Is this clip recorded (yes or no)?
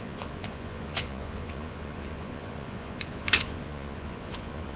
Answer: no